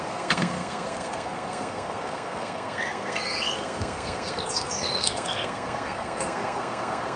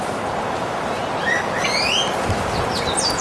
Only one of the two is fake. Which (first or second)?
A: first